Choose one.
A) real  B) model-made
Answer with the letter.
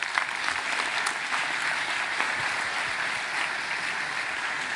A